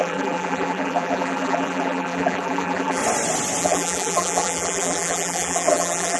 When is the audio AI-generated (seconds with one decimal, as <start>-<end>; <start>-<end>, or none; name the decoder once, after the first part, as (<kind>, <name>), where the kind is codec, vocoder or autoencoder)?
0.0-3.0 (vocoder, BigVGAN v2); 3.6-6.2